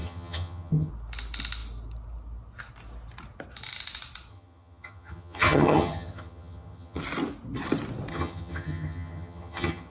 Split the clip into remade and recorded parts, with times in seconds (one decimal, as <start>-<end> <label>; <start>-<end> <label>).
0.0-0.9 remade; 0.9-4.3 recorded; 4.3-7.0 remade; 7.0-8.1 recorded; 8.1-9.9 remade